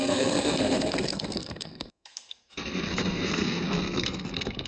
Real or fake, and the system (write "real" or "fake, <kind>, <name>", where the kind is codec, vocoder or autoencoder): fake, codec, SNAC